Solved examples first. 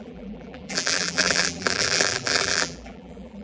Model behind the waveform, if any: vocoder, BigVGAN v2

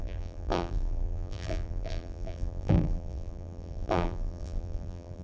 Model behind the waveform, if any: vocoder, BigVGAN v2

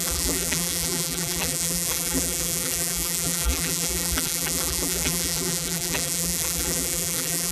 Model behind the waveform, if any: vocoder, BigVGAN v2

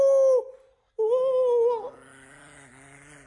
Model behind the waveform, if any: none